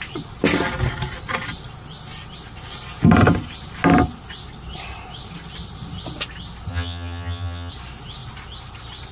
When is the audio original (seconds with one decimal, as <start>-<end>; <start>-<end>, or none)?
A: 0.0-6.7; 7.7-9.1